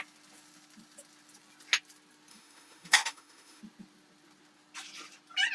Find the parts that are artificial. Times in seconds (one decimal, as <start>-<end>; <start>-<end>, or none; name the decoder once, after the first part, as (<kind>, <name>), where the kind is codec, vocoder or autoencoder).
2.3-3.6 (autoencoder, DAC-VAE)